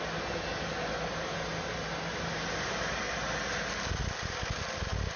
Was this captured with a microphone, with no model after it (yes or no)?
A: yes